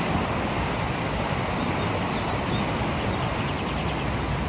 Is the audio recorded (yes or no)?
yes